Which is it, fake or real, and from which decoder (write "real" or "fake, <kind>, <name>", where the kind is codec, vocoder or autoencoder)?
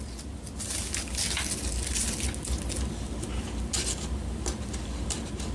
real